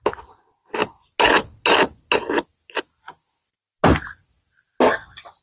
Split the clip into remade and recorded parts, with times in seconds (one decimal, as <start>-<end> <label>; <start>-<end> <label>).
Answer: 0.0-5.4 recorded